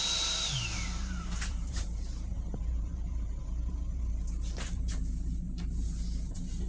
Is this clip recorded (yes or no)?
no